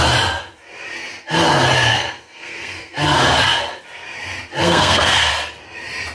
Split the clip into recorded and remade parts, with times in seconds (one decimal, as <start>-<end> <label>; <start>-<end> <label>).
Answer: 0.0-1.9 recorded; 1.9-3.2 remade; 3.2-4.6 recorded; 4.6-5.3 remade; 5.3-6.1 recorded

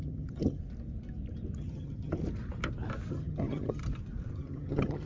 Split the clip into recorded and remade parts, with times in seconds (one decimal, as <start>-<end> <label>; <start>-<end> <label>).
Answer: 0.0-0.6 remade; 0.6-1.6 recorded; 1.6-2.2 remade; 2.2-3.1 recorded; 3.1-3.8 remade; 3.8-4.3 recorded; 4.3-5.1 remade

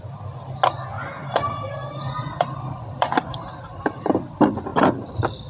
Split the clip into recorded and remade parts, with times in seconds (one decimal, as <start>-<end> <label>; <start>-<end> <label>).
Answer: 0.0-1.2 recorded; 1.2-4.2 remade; 4.2-5.5 recorded